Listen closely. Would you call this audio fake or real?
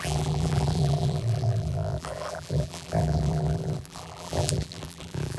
fake